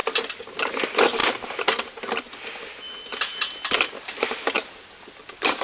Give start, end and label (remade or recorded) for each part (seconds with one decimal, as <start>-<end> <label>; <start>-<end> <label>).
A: 0.0-5.6 recorded